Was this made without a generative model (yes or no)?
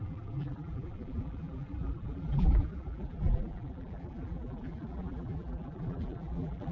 no